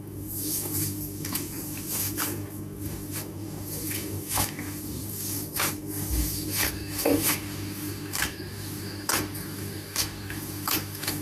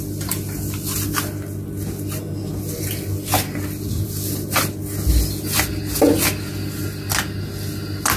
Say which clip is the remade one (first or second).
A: first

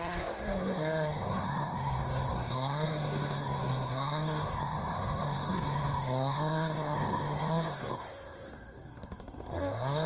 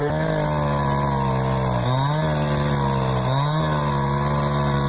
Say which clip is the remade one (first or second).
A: first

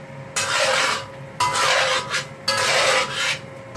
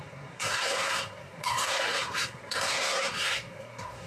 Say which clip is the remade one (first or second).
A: second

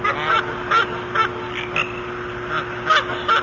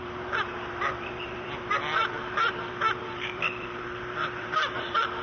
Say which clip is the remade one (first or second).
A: second